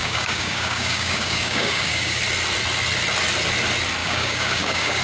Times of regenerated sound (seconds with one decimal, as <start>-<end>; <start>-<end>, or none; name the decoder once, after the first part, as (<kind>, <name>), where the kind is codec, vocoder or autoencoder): 0.0-2.2 (codec, DAC); 4.0-5.0